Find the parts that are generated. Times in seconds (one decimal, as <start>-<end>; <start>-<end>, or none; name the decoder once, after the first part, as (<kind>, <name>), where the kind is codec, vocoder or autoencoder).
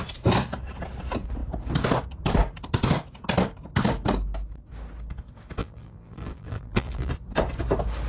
5.6-7.1 (vocoder, BigVGAN v2)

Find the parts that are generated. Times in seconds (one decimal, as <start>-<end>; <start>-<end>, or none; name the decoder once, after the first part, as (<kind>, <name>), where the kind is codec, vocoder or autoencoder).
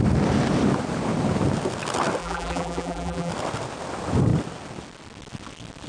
2.2-3.3 (vocoder, BigVGAN v2)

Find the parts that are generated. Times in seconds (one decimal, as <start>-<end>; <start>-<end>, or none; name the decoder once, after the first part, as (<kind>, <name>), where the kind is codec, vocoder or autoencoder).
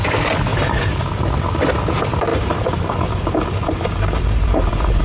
0.5-1.1 (vocoder, BigVGAN v2); 2.3-5.0